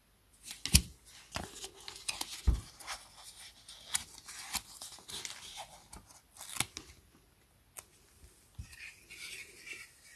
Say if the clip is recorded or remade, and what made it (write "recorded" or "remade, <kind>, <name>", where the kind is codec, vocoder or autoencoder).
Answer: recorded